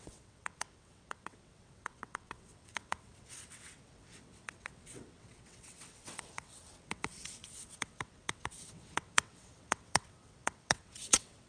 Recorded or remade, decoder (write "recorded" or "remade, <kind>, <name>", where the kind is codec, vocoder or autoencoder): remade, vocoder, WaveNeXt